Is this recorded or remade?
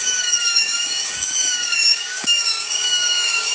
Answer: remade